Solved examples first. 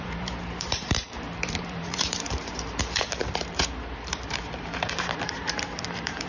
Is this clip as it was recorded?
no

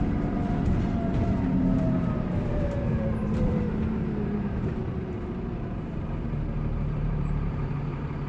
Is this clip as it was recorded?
no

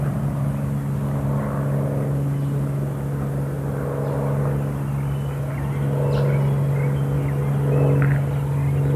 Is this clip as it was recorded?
yes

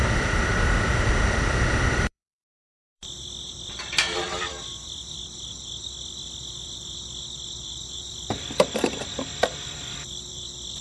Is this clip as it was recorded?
no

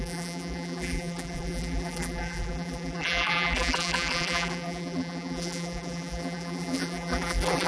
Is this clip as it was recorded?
no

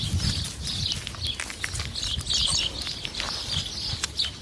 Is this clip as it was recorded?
yes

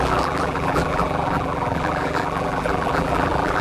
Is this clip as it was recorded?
no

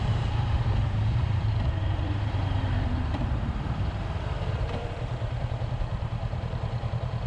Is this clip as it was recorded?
no